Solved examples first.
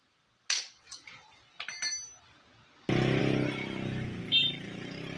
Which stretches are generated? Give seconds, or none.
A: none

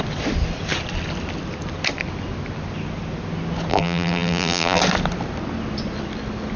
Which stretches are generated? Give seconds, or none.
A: 3.7-4.8 (vocoder, BigVGAN v2)

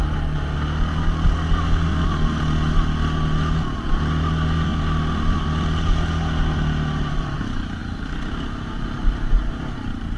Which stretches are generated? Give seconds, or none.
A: none